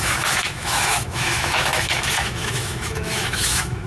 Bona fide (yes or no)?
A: no